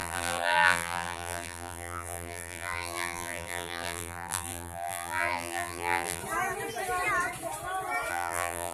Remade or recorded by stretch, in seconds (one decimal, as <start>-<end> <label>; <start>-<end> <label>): 0.0-6.2 remade; 6.2-8.1 recorded; 8.1-8.7 remade